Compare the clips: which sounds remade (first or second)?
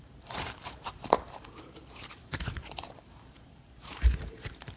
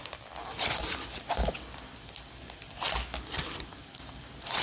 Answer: first